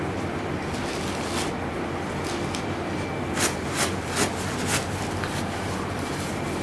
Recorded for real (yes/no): yes